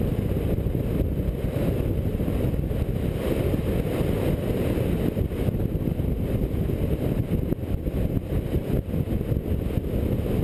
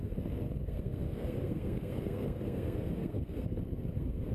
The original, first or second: first